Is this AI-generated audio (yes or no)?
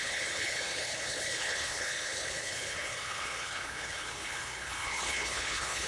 yes